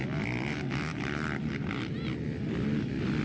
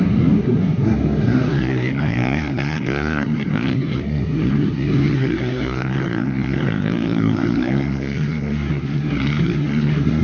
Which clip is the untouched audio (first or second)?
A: first